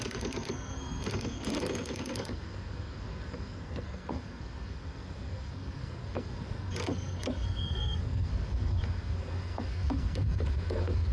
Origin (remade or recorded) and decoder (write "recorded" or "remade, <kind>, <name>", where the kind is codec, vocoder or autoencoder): remade, codec, SNAC